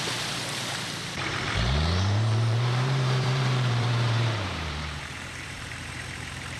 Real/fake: fake